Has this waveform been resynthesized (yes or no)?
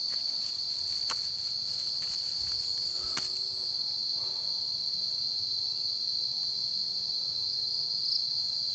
no